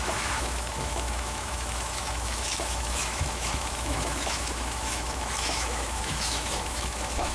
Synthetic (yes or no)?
yes